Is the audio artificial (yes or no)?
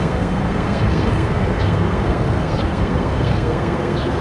yes